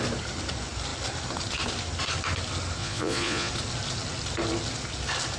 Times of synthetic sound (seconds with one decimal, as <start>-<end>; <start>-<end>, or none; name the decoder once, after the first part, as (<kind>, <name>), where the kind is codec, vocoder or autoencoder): 2.8-3.5 (vocoder, Vocos)